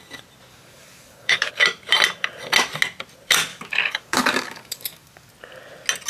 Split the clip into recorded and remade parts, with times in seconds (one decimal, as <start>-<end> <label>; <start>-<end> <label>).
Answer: 0.0-0.5 recorded; 0.5-1.5 remade; 1.5-3.5 recorded; 3.5-5.3 remade; 5.3-6.1 recorded